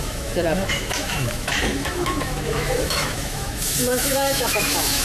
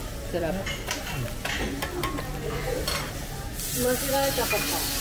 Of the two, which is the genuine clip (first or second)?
second